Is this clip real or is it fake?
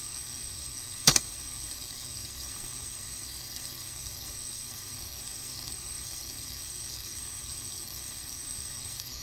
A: fake